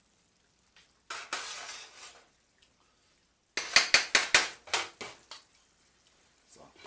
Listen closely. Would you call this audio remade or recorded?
recorded